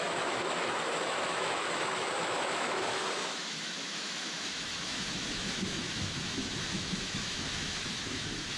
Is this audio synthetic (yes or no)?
yes